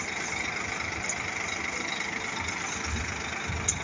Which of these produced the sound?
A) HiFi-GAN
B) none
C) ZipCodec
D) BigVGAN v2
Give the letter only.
B